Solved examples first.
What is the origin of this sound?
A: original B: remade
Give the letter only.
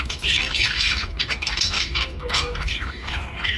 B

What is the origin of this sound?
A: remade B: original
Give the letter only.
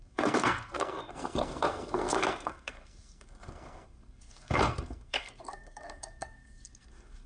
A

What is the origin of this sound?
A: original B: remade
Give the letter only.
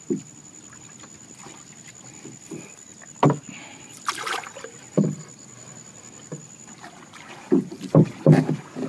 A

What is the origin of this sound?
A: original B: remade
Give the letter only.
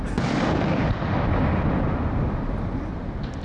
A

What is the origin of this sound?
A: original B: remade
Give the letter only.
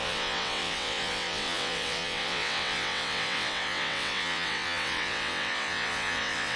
B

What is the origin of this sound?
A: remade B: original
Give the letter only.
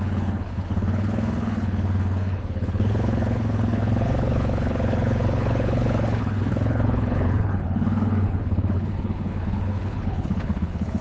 A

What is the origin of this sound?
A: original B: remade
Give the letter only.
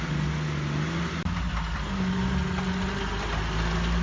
A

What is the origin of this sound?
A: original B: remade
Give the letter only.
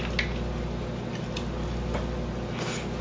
A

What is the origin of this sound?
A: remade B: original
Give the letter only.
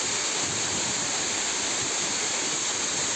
B